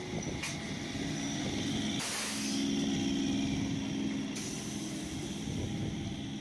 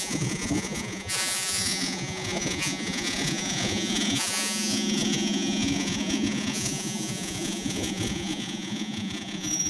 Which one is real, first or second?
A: first